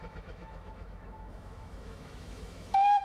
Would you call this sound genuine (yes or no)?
no